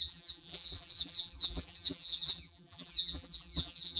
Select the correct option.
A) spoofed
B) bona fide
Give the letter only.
A